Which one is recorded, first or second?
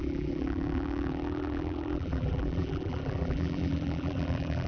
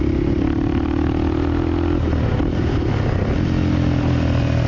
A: second